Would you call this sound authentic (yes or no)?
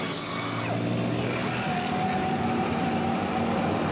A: yes